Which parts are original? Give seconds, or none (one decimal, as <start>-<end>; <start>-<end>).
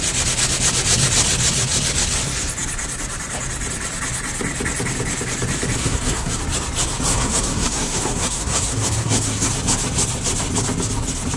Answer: 0.0-5.8; 6.4-7.1; 9.5-11.4